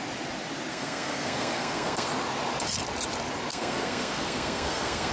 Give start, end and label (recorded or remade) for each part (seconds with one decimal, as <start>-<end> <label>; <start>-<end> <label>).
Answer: 0.0-0.7 recorded; 0.7-2.1 remade; 2.1-3.5 recorded; 3.5-5.1 remade